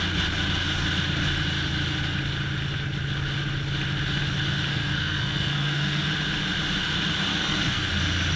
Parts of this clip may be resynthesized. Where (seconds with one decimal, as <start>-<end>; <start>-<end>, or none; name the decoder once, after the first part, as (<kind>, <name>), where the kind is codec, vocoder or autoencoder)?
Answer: 4.7-6.1 (codec, SNAC); 7.3-7.9